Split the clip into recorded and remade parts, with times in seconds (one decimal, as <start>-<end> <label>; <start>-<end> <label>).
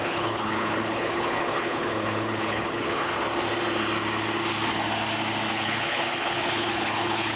0.0-3.1 remade; 3.1-5.5 recorded; 5.5-7.4 remade